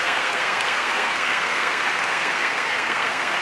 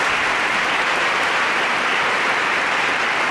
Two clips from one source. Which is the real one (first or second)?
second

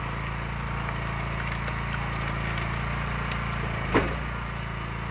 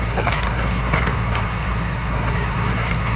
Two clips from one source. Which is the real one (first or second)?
first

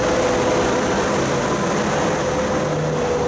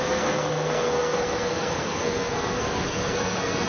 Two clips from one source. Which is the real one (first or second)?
first